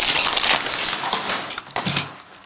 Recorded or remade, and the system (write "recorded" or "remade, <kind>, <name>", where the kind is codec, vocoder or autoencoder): recorded